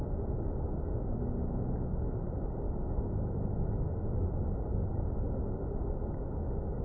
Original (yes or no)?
yes